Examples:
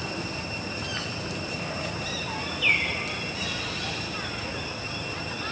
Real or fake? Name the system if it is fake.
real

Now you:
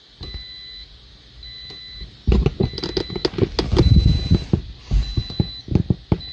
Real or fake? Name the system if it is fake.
real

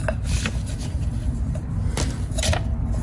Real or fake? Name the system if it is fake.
real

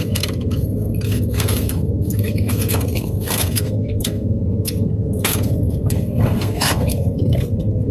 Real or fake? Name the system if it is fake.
fake, codec, SNAC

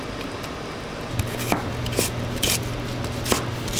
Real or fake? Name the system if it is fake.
real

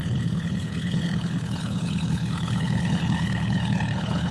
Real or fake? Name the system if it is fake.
fake, codec, HILCodec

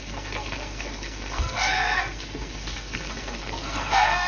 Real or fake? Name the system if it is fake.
fake, codec, SNAC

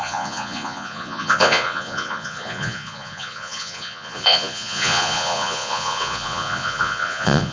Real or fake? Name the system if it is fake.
fake, vocoder, Vocos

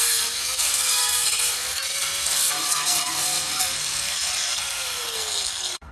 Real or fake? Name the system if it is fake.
fake, codec, SNAC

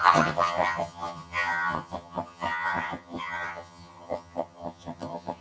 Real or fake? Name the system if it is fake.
fake, vocoder, HiFi-GAN